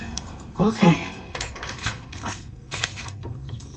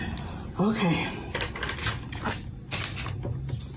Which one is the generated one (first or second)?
first